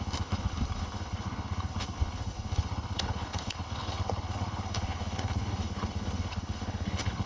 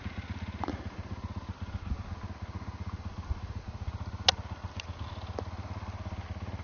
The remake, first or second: first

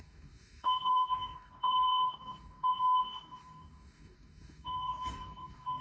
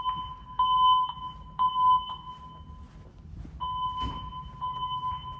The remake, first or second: first